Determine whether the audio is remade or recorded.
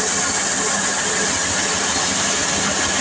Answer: recorded